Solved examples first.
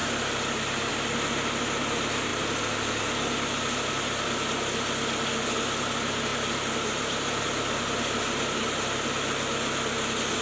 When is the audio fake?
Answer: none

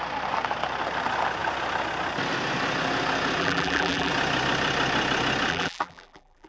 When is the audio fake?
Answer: 3.4-4.1 (vocoder, BigVGAN v2); 5.5-6.5

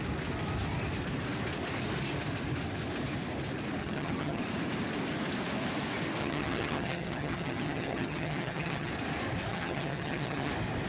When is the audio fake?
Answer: 3.8-4.4 (vocoder, HiFi-GAN); 6.2-8.9; 9.5-10.5